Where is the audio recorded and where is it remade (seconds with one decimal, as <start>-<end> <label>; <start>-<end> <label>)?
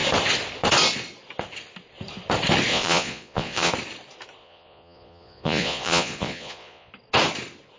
0.0-2.7 recorded; 2.7-3.7 remade; 3.7-4.4 recorded; 4.4-6.9 remade; 6.9-7.8 recorded